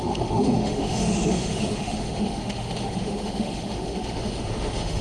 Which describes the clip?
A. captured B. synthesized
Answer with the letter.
B